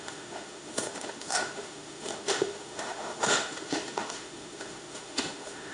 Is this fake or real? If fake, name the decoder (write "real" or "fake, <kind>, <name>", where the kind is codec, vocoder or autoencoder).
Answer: fake, autoencoder, DAC-VAE